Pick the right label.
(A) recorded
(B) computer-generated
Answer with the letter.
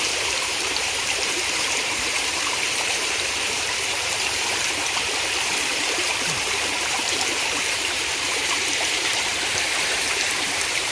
B